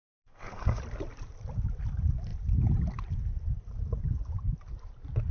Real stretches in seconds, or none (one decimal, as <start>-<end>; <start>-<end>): 0.8-5.3